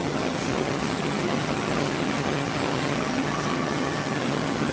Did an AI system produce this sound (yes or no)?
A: yes